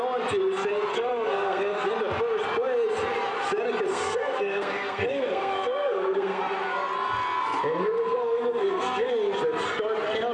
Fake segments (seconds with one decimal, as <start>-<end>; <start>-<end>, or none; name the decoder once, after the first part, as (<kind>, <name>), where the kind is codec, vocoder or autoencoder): 0.9-1.9 (codec, SNAC); 3.9-6.4; 7.8-9.1